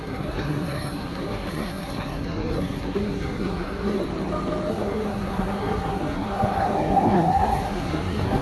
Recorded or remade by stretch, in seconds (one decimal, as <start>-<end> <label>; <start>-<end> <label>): 0.0-4.0 remade; 4.0-4.7 recorded; 4.7-8.4 remade